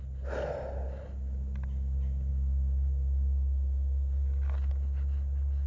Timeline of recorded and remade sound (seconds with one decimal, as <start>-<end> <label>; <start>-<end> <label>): 0.0-5.7 recorded